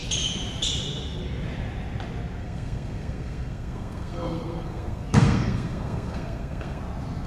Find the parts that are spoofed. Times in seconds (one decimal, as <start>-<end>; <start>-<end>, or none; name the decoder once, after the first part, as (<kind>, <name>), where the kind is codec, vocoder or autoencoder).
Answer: 2.4-6.8 (codec, SNAC)